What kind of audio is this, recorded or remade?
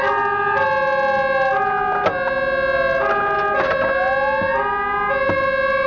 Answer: recorded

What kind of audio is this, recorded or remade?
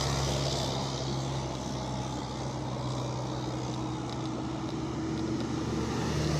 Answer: recorded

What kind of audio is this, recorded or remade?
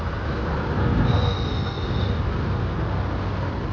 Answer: recorded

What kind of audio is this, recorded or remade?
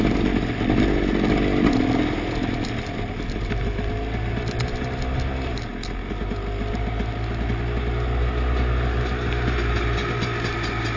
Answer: recorded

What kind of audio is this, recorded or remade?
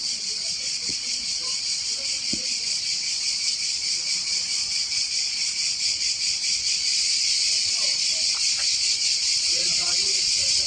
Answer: remade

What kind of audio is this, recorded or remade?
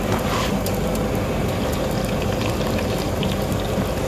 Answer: recorded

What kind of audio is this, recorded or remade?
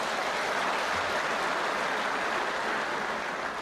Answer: recorded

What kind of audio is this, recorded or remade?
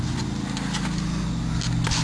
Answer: recorded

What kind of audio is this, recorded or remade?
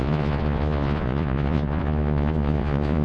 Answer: remade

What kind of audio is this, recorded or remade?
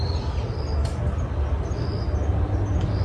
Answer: recorded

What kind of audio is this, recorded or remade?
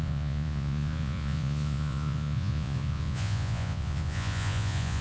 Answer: remade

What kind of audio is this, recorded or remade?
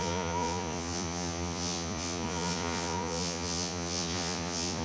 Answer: remade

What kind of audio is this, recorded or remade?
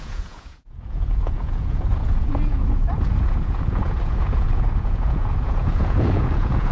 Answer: remade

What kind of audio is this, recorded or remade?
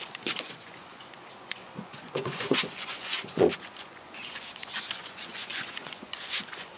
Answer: remade